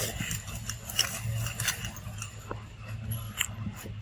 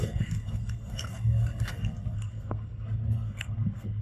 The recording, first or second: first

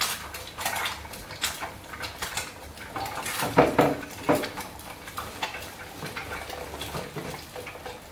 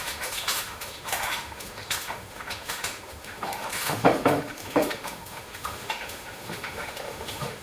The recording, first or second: first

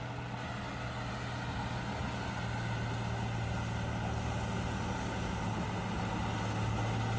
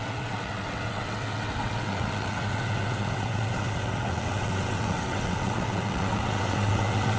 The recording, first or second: first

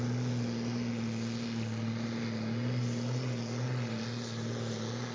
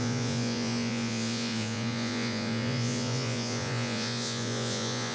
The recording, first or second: first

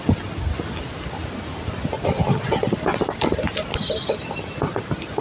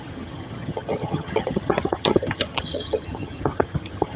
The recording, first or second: first